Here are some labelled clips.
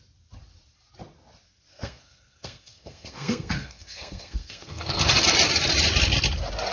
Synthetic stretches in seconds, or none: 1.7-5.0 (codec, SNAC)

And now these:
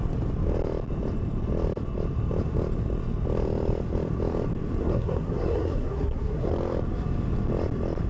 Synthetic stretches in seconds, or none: 4.8-6.5 (codec, SNAC)

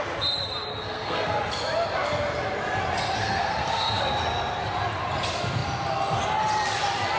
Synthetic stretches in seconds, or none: 0.7-1.4 (codec, SNAC); 3.2-4.0